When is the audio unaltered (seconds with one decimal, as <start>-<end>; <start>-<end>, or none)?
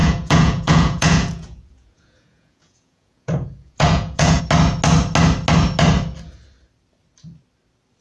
4.4-8.0